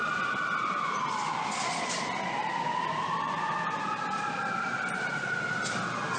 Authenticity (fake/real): real